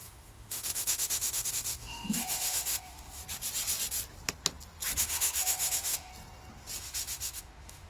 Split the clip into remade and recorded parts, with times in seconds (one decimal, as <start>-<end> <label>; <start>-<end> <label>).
0.0-3.2 remade; 3.2-5.0 recorded; 5.0-6.1 remade; 6.1-6.8 recorded; 6.8-7.9 remade